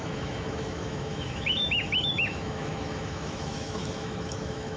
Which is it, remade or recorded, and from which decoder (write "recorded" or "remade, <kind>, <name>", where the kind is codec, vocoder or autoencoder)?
remade, autoencoder, DAC-VAE